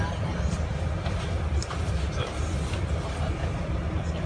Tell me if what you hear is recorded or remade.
recorded